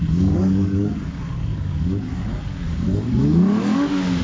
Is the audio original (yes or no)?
no